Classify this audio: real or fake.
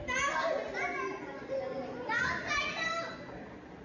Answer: real